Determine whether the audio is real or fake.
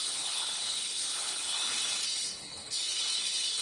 fake